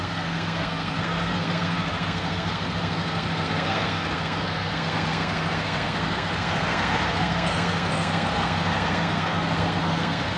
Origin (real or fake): fake